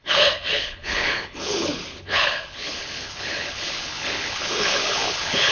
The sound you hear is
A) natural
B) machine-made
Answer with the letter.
B